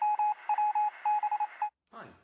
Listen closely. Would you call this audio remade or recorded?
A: recorded